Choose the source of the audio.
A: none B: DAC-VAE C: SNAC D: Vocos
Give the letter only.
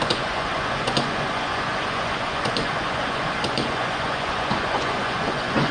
D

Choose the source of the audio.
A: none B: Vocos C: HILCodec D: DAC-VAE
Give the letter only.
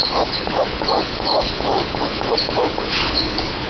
C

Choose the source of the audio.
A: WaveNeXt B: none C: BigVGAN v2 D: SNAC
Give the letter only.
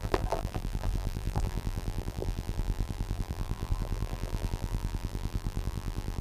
C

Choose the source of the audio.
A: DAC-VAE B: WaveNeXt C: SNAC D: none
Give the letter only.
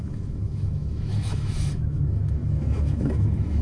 A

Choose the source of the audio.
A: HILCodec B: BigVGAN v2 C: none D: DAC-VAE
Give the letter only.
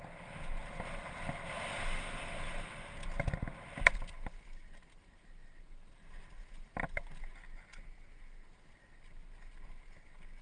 C